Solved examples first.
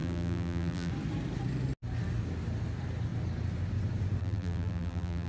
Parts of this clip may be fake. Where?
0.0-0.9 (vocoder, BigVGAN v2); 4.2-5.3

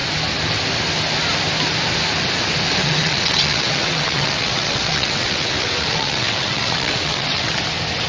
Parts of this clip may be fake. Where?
2.8-7.5 (vocoder, WaveNeXt)

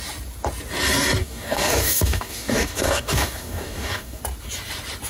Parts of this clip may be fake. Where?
1.2-4.2 (codec, DAC)

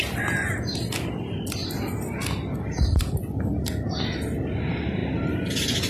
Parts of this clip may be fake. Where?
none

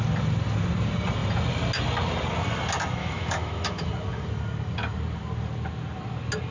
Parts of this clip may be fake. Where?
3.0-3.9 (autoencoder, DAC-VAE)

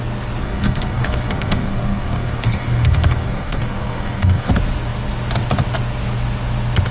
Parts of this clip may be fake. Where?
0.4-4.5 (codec, SNAC)